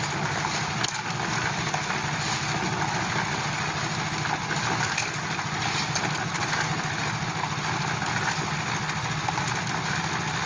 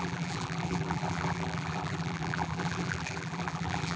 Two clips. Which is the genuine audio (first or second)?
first